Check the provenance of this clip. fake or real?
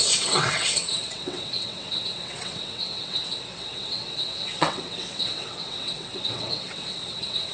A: fake